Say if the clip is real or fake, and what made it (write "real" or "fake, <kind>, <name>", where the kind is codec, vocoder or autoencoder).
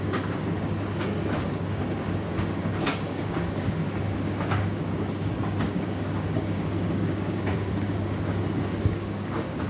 fake, codec, DAC